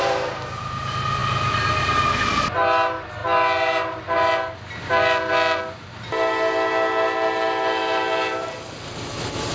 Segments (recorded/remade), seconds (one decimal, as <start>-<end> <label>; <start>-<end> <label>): 0.0-9.5 recorded